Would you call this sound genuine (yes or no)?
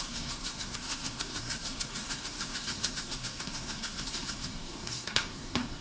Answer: no